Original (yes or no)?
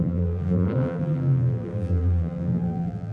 no